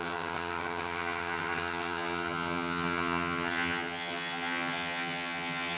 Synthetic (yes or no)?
yes